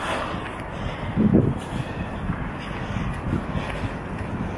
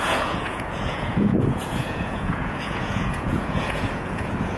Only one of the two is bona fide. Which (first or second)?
first